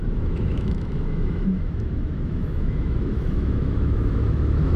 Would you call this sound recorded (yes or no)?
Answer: no